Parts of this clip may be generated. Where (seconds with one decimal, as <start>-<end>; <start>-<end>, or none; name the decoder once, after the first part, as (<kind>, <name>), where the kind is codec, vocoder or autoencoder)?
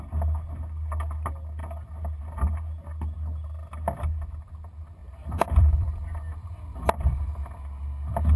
5.0-7.2 (vocoder, BigVGAN v2)